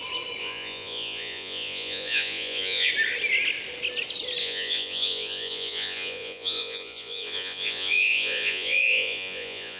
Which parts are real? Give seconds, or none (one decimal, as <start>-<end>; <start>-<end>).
0.0-0.4; 2.9-4.4